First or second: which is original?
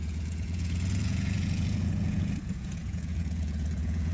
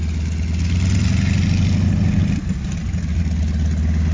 second